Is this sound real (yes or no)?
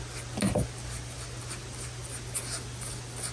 yes